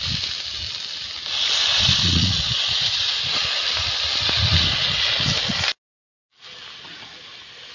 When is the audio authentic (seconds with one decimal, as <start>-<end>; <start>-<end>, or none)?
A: 0.0-1.7; 3.4-7.7

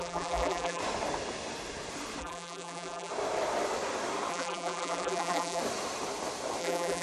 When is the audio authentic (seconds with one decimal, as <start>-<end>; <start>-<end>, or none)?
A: 0.8-2.2; 3.1-4.3; 5.6-6.6